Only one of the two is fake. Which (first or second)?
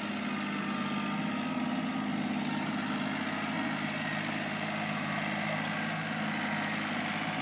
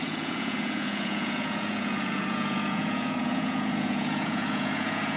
second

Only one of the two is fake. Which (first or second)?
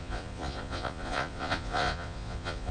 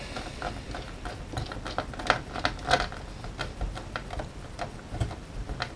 first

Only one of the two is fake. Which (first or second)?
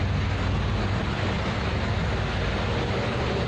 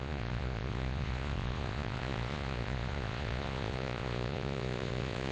second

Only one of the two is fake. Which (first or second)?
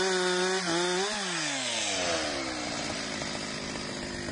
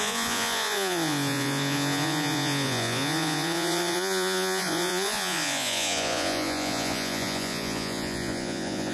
second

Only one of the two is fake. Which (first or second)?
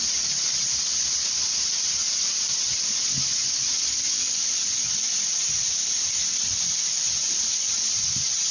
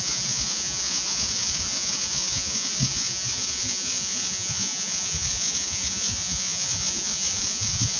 second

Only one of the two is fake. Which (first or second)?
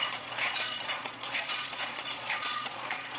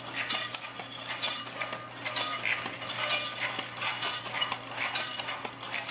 first